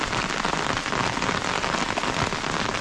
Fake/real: real